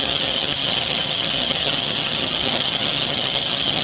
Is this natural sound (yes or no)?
no